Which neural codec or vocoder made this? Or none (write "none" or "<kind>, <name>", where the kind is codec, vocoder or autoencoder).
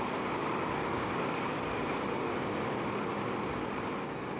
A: none